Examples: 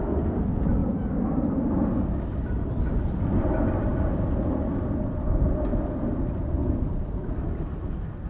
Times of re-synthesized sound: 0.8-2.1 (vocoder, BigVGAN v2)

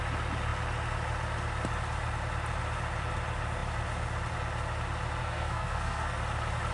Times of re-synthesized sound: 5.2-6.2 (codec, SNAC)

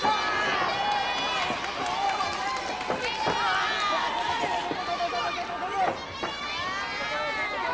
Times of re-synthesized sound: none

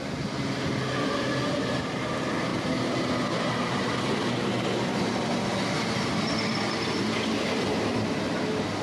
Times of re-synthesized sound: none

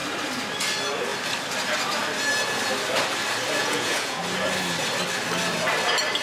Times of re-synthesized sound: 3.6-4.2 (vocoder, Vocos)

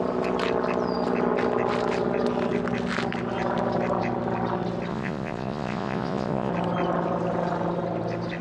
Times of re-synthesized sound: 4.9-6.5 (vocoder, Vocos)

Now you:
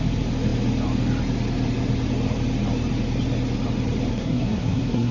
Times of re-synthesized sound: 4.1-5.1 (codec, SNAC)